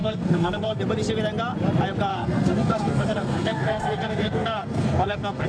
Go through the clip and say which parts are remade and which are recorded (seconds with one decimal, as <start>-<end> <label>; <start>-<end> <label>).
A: 0.0-0.8 remade; 0.8-2.1 recorded; 2.1-5.5 remade